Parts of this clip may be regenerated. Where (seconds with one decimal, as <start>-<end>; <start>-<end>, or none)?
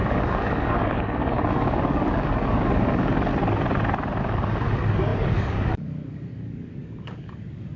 0.0-3.3; 4.2-7.8